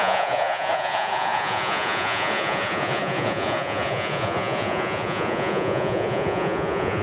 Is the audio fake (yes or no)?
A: yes